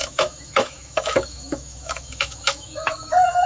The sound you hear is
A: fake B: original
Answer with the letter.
A